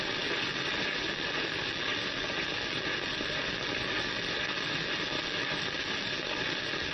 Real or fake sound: real